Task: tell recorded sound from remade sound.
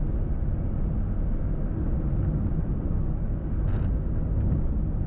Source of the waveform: recorded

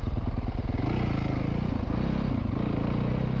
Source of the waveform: recorded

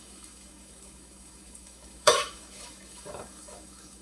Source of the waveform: remade